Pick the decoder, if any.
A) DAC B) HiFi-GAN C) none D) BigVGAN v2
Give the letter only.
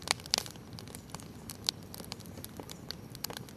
D